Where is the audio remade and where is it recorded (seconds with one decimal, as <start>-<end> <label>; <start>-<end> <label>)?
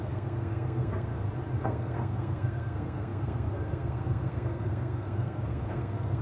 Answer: 0.0-1.1 remade; 1.1-1.6 recorded; 1.6-6.2 remade